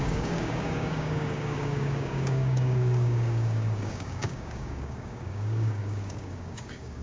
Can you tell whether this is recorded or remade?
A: remade